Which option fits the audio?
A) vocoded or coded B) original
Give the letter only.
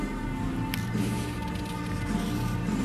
B